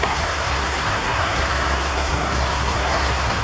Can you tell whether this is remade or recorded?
remade